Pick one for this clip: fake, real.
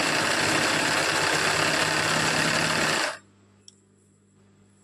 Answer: real